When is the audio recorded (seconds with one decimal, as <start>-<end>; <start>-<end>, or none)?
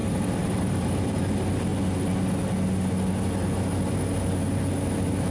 1.2-5.3